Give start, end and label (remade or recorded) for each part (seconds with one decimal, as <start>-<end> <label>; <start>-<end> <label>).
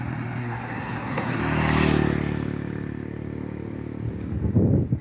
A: 0.0-0.4 recorded; 0.4-1.4 remade; 1.4-5.0 recorded